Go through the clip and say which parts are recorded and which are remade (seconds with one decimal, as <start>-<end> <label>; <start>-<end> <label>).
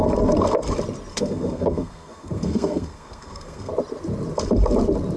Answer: 0.0-1.1 recorded; 1.1-3.7 remade; 3.7-5.2 recorded